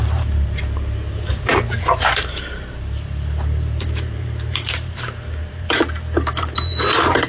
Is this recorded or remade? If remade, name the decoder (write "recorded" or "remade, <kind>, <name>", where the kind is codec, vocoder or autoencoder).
remade, vocoder, BigVGAN v2